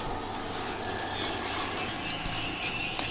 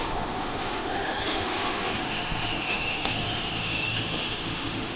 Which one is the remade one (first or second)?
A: second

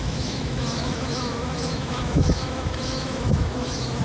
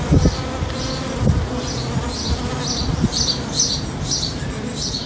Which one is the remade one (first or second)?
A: first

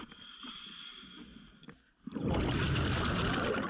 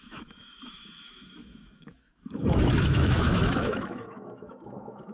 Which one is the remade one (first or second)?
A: second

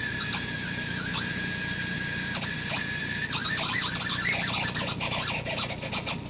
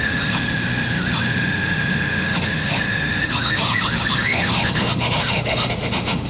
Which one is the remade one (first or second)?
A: second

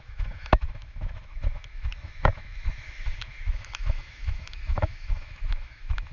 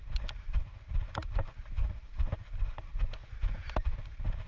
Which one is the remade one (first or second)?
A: first